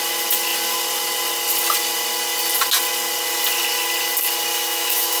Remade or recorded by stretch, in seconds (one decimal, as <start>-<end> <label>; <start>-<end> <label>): 0.0-4.5 recorded; 4.5-5.2 remade